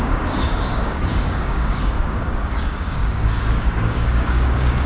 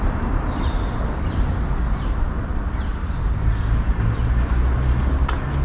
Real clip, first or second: second